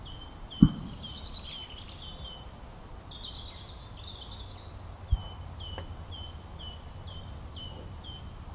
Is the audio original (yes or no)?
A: yes